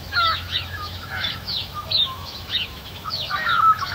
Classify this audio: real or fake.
fake